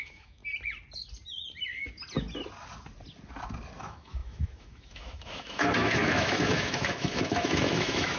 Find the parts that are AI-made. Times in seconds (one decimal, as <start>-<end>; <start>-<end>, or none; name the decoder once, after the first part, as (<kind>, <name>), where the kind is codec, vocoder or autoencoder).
0.0-0.4 (autoencoder, DAC-VAE); 3.8-8.2